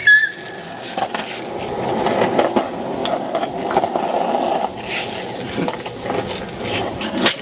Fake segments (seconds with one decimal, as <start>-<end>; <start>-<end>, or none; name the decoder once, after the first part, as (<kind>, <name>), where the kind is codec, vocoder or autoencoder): none